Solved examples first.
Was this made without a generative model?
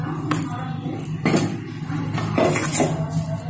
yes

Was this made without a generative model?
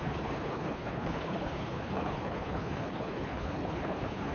no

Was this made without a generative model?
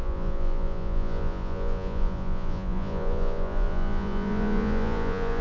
no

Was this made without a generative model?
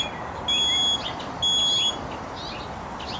yes